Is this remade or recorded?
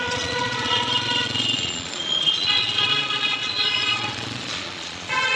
remade